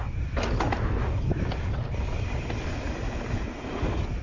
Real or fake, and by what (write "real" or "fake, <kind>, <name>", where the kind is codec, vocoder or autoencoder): real